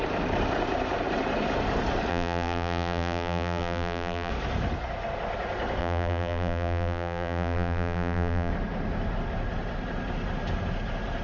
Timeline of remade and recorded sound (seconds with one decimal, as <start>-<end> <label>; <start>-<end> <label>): 0.0-2.1 recorded; 2.1-4.3 remade; 4.3-5.8 recorded; 5.8-8.5 remade; 8.5-11.2 recorded